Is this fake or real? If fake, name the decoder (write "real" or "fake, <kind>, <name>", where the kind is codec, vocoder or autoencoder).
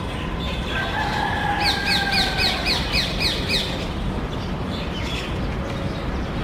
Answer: real